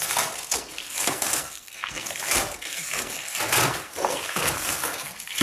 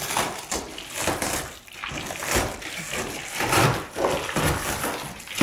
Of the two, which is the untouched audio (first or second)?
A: second